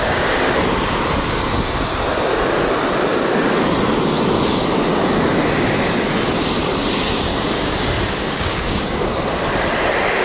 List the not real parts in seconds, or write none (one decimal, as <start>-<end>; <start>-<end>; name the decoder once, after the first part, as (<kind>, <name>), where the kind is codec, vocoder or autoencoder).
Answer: 0.0-1.4 (codec, DAC); 7.3-9.1